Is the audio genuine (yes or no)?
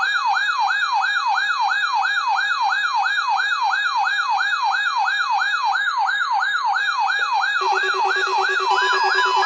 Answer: yes